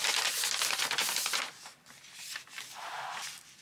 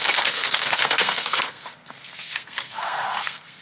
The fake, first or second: second